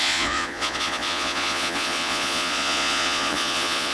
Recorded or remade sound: remade